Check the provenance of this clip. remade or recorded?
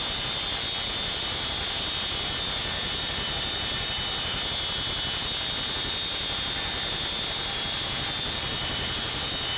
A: recorded